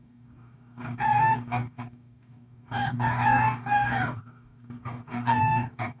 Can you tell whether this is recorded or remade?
remade